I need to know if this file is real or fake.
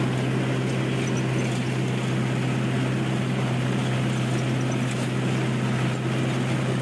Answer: real